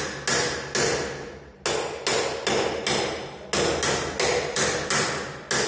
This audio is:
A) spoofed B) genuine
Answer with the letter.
B